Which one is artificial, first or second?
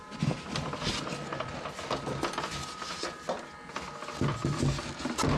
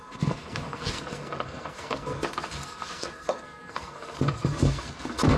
second